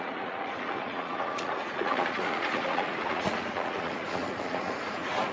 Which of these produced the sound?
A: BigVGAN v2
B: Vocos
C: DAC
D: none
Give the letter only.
B